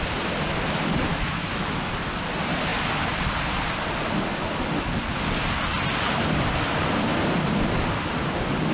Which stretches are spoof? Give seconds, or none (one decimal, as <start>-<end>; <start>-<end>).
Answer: 1.1-1.9